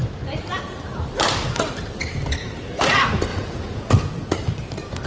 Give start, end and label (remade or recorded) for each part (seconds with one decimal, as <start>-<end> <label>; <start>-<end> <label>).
0.0-3.3 recorded; 3.3-3.9 remade; 3.9-5.1 recorded